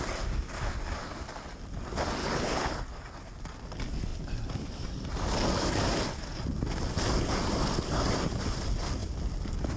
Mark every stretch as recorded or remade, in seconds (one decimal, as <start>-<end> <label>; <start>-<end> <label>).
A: 0.0-2.2 recorded; 2.2-2.8 remade; 2.8-9.8 recorded